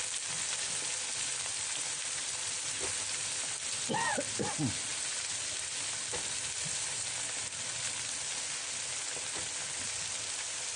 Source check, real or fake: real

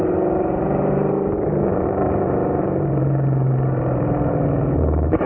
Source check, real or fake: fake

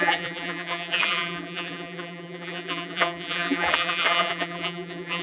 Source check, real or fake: fake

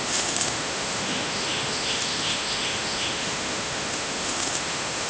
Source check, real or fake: fake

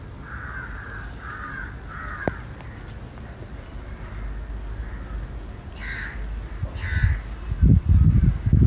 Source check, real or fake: real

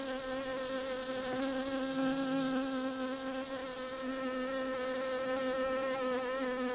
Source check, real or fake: real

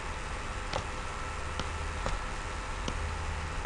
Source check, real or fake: real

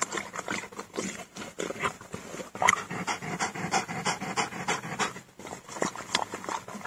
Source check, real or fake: real